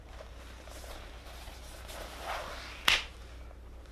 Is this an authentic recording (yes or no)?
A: yes